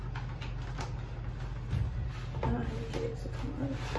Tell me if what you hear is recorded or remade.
recorded